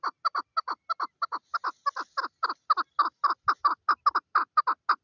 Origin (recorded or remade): recorded